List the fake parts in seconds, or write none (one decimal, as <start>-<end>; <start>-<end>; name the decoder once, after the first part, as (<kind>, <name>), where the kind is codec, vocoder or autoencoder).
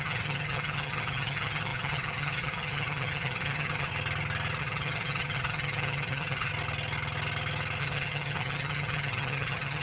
0.0-3.9 (vocoder, HiFi-GAN); 4.6-6.5; 7.8-9.8